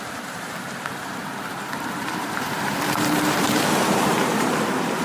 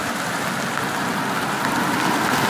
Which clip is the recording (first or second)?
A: second